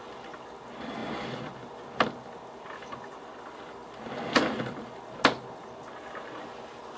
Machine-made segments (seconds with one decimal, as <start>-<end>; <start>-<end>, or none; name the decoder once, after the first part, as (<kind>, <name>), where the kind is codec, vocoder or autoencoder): none